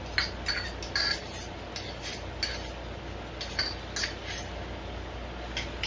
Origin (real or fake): real